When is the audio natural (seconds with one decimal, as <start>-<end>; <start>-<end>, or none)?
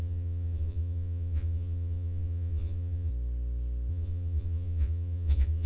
3.1-3.9